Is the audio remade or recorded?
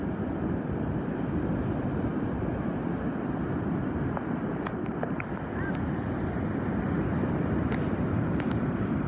recorded